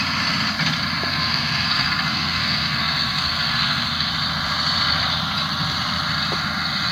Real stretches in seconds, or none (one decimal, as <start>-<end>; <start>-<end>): 0.0-1.1; 4.1-6.9